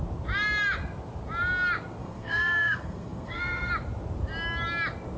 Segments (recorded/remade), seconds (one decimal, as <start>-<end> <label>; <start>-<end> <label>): 0.0-2.0 recorded; 2.0-3.7 remade; 3.7-5.2 recorded